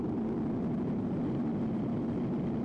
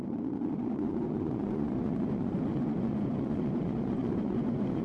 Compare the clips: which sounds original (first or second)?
first